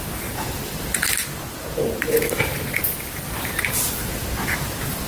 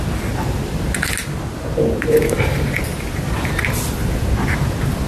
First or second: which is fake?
first